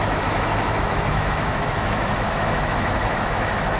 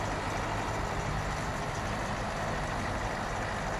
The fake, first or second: first